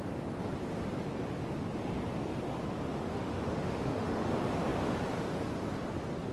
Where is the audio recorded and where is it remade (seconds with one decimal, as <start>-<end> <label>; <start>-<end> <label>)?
0.0-3.0 recorded; 3.0-4.3 remade; 4.3-6.3 recorded